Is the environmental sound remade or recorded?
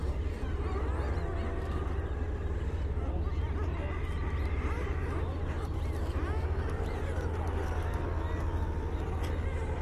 recorded